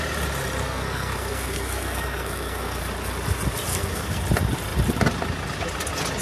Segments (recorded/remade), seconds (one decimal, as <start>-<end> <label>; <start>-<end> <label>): 0.0-0.6 recorded; 0.6-2.8 remade; 2.8-3.7 recorded; 3.7-4.2 remade; 4.2-6.2 recorded